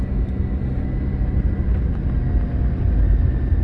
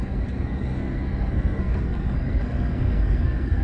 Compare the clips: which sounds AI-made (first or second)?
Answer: second